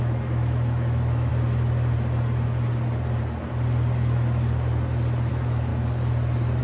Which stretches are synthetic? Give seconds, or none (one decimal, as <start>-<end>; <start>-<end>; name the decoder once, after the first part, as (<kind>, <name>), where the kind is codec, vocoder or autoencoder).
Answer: 0.0-1.3 (autoencoder, DAC-VAE); 5.3-5.7